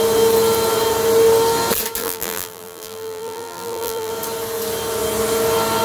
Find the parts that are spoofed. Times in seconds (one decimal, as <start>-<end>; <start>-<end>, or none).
2.0-4.1